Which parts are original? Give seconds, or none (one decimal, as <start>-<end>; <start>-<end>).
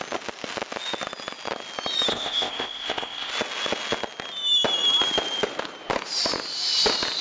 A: 0.0-2.1; 3.3-7.2